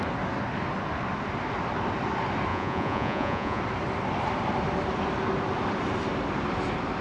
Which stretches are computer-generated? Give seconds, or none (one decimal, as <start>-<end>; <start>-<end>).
2.5-3.6